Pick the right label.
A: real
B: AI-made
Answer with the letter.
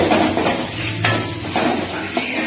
A